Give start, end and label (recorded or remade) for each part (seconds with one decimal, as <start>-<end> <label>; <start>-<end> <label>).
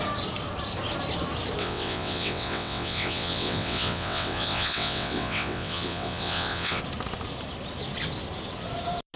0.0-1.6 recorded; 1.6-6.8 remade; 6.8-9.2 recorded